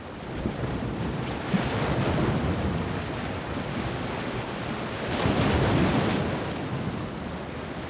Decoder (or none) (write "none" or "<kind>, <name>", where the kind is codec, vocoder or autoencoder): none